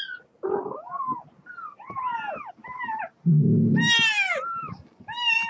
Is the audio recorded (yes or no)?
yes